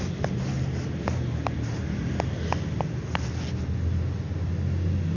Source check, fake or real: real